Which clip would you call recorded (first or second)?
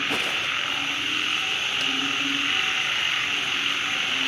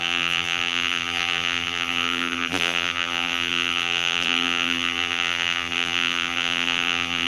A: first